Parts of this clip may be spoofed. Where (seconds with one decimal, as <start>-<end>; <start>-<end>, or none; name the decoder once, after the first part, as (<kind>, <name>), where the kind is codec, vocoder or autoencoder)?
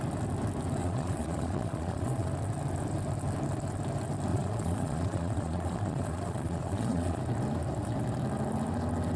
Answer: 0.8-2.3 (vocoder, Vocos); 4.3-7.2